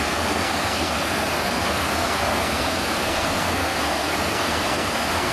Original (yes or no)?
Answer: no